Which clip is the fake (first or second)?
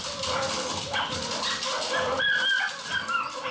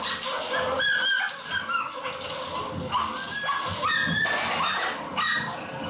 first